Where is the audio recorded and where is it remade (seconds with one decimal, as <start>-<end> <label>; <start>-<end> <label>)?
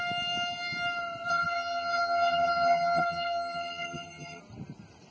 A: 0.0-1.3 recorded; 1.3-4.4 remade; 4.4-5.1 recorded